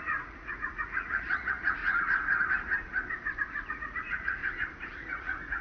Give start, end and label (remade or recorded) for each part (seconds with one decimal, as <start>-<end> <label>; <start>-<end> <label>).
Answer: 0.0-1.8 remade; 1.8-3.7 recorded; 3.7-4.4 remade; 4.4-4.9 recorded; 4.9-5.6 remade